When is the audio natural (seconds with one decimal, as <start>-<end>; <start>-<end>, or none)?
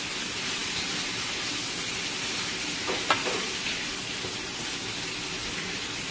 0.0-6.1